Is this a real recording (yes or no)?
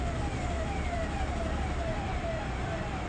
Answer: yes